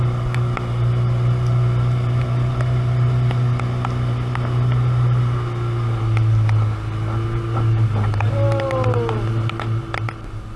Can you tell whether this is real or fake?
real